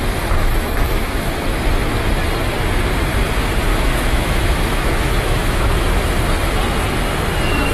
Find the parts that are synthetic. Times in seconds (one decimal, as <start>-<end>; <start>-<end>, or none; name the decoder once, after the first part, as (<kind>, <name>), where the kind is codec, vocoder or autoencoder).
0.4-1.4 (autoencoder, DAC-VAE); 3.7-6.1